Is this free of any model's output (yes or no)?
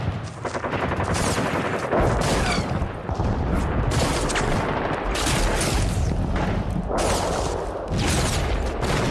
yes